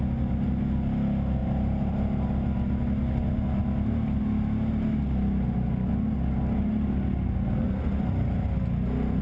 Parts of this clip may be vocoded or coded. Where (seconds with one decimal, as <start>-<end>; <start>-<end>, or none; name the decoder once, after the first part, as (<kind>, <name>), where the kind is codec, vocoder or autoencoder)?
none